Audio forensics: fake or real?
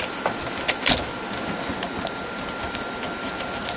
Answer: real